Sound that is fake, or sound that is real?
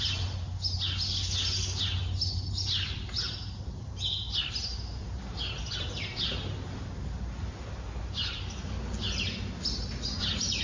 real